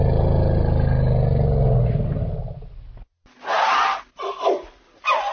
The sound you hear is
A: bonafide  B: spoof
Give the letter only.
A